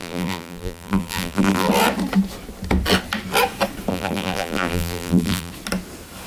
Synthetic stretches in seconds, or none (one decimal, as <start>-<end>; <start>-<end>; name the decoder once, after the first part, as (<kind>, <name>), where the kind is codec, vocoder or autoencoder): 0.0-1.7 (vocoder, BigVGAN v2); 3.9-5.5